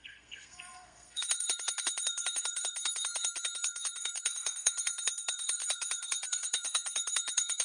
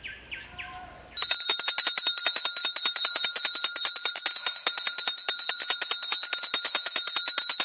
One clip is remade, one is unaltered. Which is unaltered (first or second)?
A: second